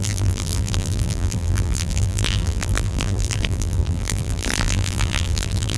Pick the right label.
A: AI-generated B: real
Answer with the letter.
A